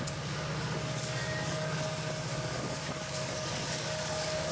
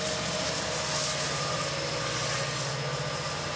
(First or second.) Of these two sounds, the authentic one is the second